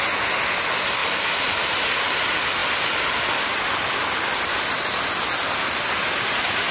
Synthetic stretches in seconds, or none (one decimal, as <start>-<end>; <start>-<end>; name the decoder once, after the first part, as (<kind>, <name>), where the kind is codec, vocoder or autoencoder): none